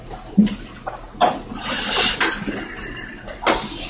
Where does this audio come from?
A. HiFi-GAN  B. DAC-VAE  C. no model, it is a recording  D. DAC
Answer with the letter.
C